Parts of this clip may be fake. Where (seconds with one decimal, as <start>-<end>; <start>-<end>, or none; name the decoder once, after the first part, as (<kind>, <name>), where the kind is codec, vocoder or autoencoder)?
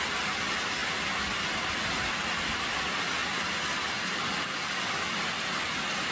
none